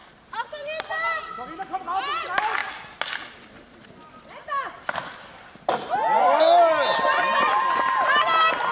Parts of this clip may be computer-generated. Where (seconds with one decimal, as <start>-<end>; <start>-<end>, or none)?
none